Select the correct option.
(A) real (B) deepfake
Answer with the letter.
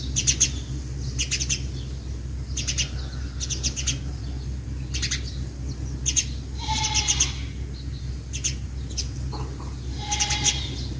A